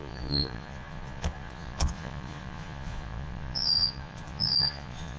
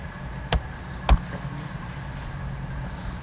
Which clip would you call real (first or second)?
second